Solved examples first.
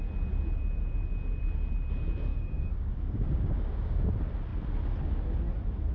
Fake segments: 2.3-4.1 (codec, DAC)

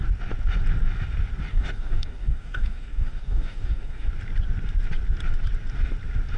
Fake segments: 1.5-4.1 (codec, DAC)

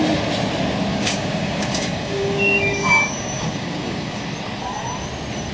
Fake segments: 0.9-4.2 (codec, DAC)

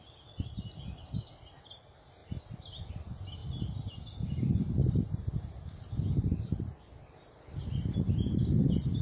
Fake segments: none